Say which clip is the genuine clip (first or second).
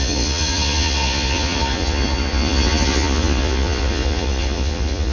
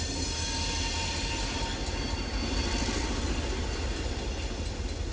second